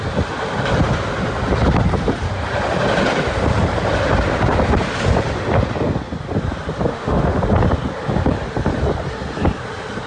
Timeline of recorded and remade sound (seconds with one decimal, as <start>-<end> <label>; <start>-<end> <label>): 0.0-6.9 recorded; 6.9-7.4 remade; 7.4-10.1 recorded